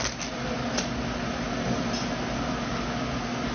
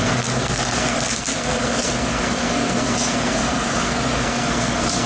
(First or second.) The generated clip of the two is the second